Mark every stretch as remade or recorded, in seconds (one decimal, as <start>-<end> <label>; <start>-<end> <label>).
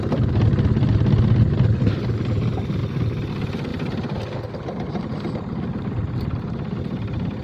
0.0-7.4 recorded